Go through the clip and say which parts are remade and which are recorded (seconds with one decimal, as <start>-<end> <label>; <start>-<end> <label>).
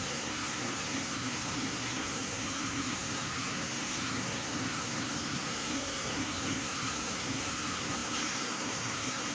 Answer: 0.0-9.3 remade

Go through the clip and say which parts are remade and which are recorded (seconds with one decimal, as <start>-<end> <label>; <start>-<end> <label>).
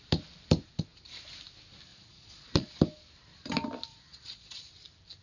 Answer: 0.0-1.9 recorded; 1.9-2.8 remade; 2.8-3.9 recorded; 3.9-4.7 remade; 4.7-5.2 recorded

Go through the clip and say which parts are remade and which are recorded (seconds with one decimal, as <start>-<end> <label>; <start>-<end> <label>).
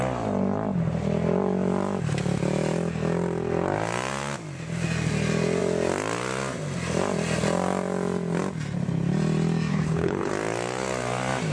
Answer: 0.0-9.7 recorded; 9.7-10.3 remade; 10.3-11.5 recorded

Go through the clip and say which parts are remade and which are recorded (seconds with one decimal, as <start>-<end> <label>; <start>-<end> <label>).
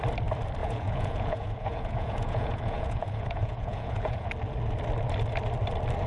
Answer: 0.0-0.6 recorded; 0.6-4.3 remade; 4.3-6.1 recorded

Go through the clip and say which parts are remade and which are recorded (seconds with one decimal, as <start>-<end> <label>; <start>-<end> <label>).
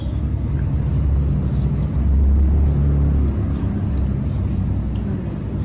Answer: 0.0-0.5 remade; 0.5-5.6 recorded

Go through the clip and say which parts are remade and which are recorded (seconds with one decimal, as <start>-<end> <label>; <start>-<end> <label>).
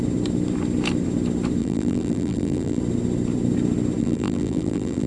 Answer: 0.0-1.6 recorded; 1.6-2.8 remade; 2.8-4.0 recorded; 4.0-5.1 remade